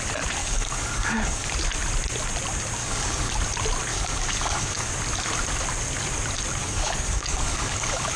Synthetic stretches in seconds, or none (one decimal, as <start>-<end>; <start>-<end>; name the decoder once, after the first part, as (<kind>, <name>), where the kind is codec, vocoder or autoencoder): 0.4-1.5 (codec, DAC); 2.8-3.3; 3.9-4.9; 6.6-8.2